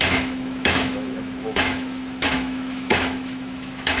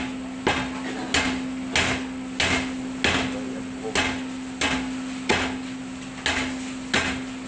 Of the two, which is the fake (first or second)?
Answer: first